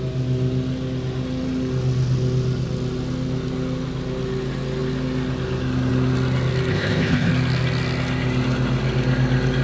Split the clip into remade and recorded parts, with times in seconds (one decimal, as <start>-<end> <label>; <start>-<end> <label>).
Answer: 0.0-6.7 recorded; 6.7-7.3 remade; 7.3-9.6 recorded